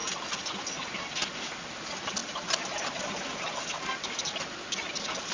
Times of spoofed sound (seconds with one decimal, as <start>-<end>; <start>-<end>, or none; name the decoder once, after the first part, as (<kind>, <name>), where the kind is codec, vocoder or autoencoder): none